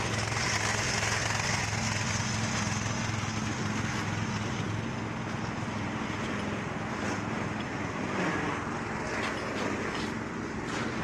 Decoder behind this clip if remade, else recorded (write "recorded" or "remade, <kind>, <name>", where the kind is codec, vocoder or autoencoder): recorded